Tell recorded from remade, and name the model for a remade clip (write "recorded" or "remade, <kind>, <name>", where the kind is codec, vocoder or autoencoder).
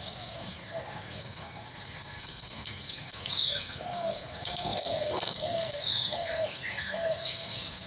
remade, codec, SNAC